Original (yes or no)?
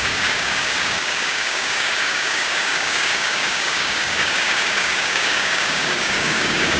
no